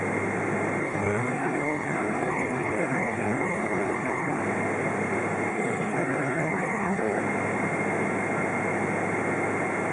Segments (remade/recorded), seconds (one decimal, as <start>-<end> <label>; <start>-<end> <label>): 0.0-0.8 recorded; 0.8-4.4 remade; 4.4-5.5 recorded; 5.5-7.2 remade; 7.2-9.9 recorded

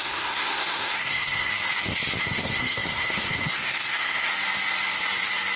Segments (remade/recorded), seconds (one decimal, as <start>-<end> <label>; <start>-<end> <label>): 0.0-1.5 remade; 1.5-2.2 recorded; 2.2-4.3 remade; 4.3-5.6 recorded

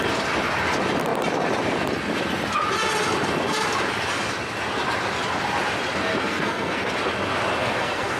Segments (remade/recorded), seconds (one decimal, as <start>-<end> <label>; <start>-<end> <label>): 0.0-6.1 recorded; 6.1-6.9 remade; 6.9-7.6 recorded; 7.6-8.2 remade